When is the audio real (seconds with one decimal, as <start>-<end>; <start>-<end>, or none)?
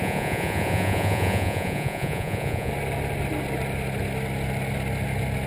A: 2.7-5.5